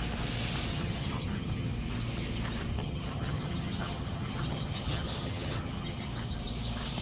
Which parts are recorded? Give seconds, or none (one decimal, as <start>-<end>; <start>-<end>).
0.0-0.7; 1.7-2.8; 6.1-7.0